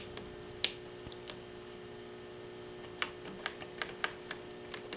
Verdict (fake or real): real